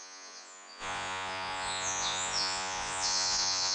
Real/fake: fake